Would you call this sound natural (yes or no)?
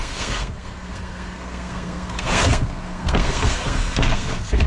no